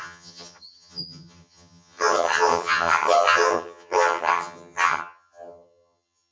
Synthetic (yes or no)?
yes